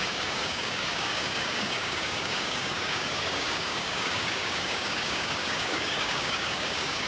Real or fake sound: fake